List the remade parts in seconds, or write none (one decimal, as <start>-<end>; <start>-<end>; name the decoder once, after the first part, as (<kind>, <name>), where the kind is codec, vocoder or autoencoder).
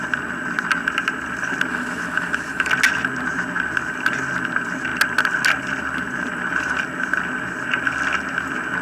1.7-2.7 (autoencoder, DAC-VAE)